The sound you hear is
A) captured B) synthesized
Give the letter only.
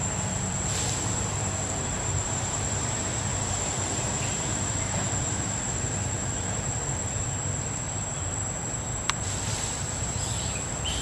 B